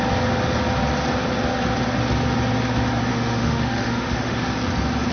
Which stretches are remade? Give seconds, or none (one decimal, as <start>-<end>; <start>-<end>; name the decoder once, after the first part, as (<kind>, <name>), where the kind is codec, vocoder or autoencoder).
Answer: 3.1-4.5 (autoencoder, DAC-VAE)